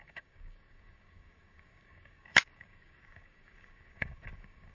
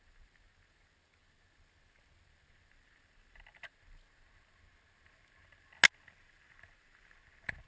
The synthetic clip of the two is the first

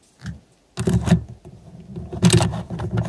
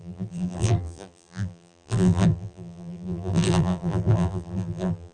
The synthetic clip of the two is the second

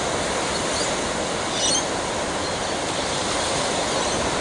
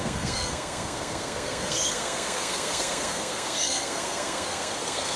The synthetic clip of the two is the second